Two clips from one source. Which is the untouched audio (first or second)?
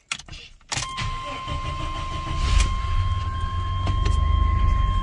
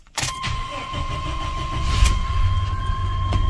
first